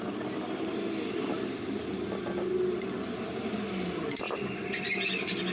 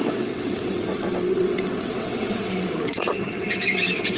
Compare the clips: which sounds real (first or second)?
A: first